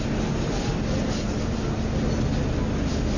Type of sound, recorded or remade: recorded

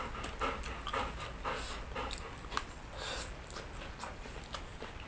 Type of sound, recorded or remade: recorded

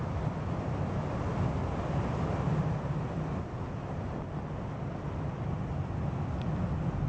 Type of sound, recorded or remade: recorded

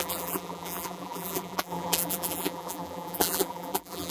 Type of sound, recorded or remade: remade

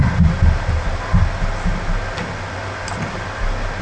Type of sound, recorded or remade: recorded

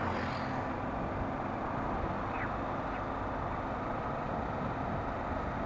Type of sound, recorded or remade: recorded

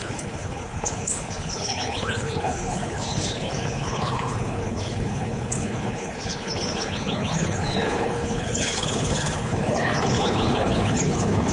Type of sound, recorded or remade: remade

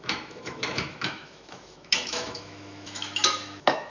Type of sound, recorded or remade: remade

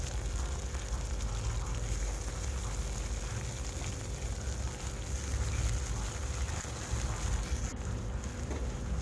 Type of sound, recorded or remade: recorded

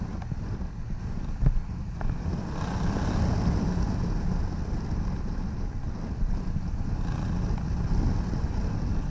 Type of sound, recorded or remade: recorded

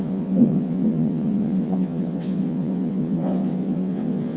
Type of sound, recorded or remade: remade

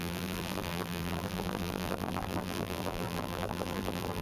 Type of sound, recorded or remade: remade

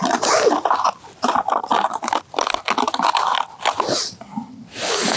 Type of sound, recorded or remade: recorded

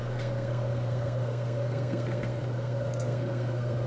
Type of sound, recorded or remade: remade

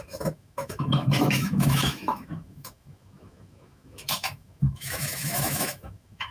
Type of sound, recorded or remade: remade